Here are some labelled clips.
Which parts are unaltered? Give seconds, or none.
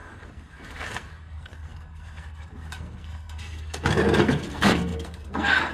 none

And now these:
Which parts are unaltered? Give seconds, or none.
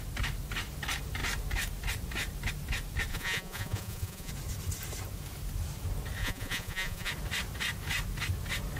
0.0-3.1; 4.3-6.2; 7.1-8.8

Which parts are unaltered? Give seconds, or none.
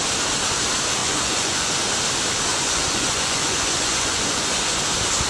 0.0-1.0; 1.7-2.5; 4.8-5.3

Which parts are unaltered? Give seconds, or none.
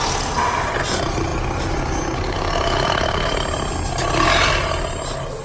0.0-5.4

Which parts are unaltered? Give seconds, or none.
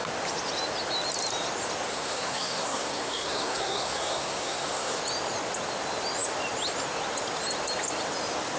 0.0-1.9; 5.0-8.6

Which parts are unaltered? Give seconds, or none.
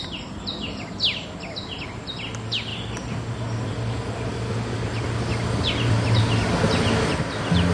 0.0-7.7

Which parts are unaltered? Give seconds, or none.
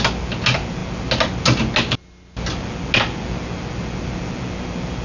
0.0-5.0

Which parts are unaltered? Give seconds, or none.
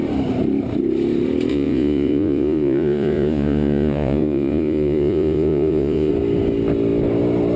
0.0-1.5; 6.1-7.6